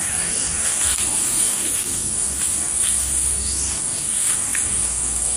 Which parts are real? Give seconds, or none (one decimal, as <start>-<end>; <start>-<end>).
none